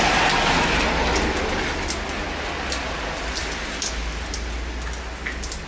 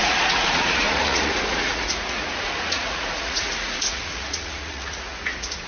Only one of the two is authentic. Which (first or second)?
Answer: first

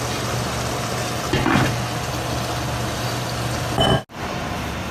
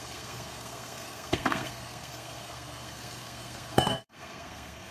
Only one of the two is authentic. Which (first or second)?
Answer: first